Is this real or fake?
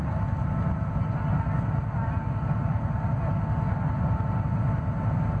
real